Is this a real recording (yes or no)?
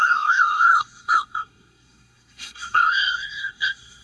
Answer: no